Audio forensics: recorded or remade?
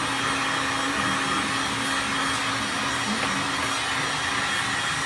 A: recorded